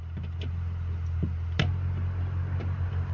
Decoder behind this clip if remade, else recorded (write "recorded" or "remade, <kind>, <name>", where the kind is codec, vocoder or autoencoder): recorded